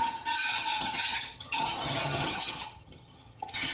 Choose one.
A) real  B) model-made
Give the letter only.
B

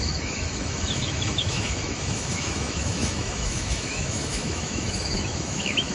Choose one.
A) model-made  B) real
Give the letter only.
A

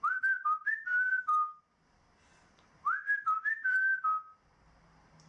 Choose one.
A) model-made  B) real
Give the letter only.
B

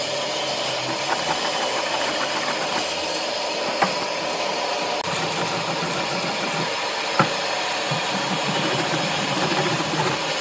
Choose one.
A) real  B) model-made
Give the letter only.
A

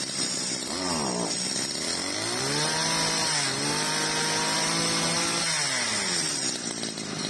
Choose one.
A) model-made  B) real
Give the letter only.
B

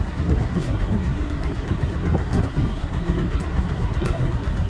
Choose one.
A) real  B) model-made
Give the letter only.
B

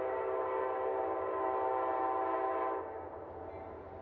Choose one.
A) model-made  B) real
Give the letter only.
B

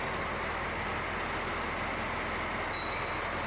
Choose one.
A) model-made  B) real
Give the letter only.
B